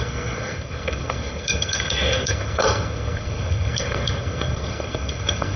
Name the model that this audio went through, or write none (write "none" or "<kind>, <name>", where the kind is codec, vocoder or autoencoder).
codec, SNAC